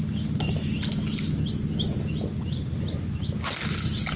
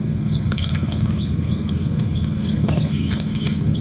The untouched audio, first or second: first